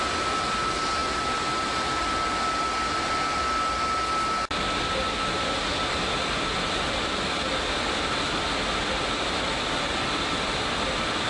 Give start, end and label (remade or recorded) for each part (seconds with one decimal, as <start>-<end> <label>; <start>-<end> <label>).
0.0-11.3 recorded